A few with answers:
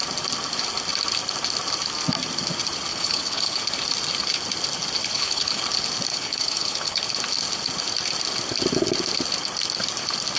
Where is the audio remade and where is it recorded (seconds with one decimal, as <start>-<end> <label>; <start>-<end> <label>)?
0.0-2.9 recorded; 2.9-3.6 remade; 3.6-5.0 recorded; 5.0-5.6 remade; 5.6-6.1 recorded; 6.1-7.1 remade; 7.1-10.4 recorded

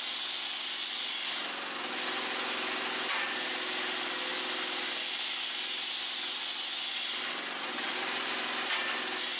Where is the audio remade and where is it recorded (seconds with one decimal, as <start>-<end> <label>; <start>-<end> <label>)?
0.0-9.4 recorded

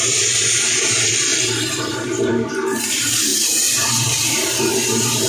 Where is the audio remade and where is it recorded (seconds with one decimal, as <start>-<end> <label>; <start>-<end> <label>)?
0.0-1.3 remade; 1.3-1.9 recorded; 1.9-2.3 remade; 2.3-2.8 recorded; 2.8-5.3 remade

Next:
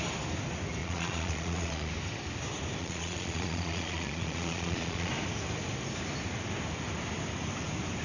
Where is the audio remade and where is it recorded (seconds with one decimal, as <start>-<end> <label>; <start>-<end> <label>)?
0.0-0.8 recorded; 0.8-1.9 remade; 1.9-2.8 recorded; 2.8-5.1 remade; 5.1-8.0 recorded

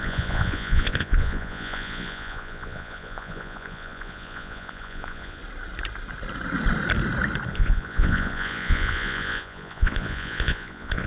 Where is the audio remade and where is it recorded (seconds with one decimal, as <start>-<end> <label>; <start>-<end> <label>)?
0.0-5.4 remade; 5.4-7.5 recorded; 7.5-11.1 remade